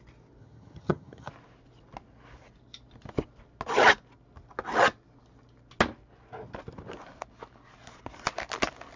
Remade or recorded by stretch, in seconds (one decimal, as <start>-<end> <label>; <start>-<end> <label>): 0.0-0.4 recorded; 0.4-1.3 remade; 1.3-9.0 recorded